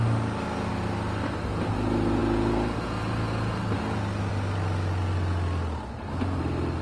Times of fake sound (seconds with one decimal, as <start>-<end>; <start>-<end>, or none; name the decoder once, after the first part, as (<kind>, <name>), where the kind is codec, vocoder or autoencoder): none